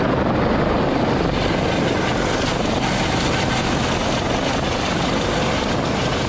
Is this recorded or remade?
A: recorded